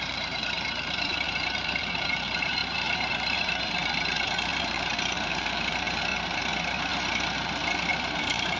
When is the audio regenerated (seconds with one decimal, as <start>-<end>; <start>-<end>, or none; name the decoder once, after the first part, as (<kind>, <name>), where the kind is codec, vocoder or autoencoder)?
0.0-6.1 (vocoder, BigVGAN v2); 8.2-8.6